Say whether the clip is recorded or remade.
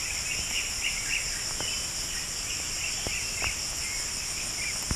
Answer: recorded